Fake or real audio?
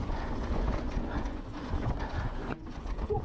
fake